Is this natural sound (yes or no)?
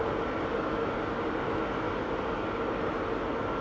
yes